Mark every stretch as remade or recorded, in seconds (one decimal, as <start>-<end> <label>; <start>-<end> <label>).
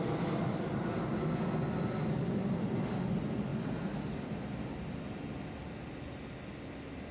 0.0-7.1 recorded